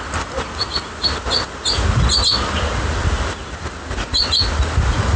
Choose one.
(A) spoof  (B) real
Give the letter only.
B